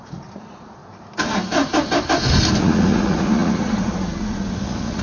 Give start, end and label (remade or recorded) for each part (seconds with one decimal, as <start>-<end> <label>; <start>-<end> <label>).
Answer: 0.0-0.8 remade; 0.8-2.6 recorded; 2.6-5.0 remade